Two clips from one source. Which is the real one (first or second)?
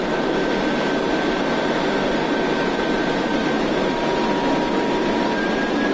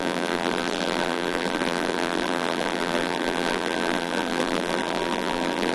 first